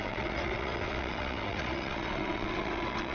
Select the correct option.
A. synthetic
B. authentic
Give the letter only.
A